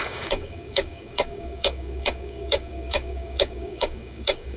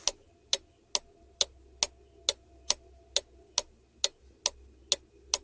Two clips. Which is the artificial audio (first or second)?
first